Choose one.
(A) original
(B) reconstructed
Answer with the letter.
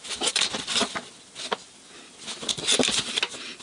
A